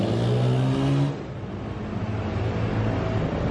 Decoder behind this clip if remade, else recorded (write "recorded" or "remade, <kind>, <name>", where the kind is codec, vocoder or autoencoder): recorded